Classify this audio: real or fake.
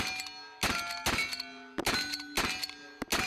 real